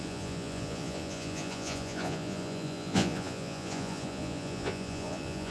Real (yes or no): no